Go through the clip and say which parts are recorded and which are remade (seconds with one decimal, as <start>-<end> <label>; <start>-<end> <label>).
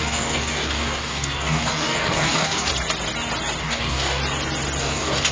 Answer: 0.0-2.7 remade; 2.7-3.6 recorded; 3.6-4.2 remade; 4.2-4.8 recorded; 4.8-5.3 remade